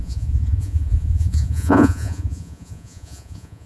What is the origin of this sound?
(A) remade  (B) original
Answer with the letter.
A